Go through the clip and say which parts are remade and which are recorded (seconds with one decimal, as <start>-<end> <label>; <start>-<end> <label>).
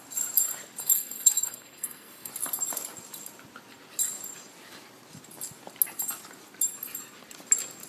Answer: 0.0-0.8 recorded; 0.8-2.3 remade; 2.3-7.9 recorded